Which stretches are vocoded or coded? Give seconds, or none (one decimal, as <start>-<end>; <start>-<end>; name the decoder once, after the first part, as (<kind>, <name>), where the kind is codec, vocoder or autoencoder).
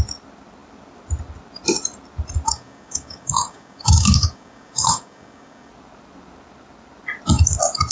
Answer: 2.5-5.7 (codec, DAC)